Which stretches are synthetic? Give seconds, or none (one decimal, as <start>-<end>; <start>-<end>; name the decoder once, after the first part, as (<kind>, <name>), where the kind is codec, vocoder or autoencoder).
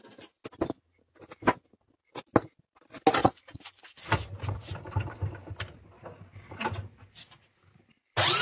3.2-4.0 (vocoder, Vocos)